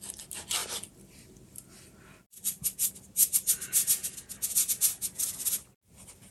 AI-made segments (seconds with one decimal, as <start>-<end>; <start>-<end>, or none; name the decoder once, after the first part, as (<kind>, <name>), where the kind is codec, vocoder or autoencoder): 0.6-2.9 (vocoder, BigVGAN v2)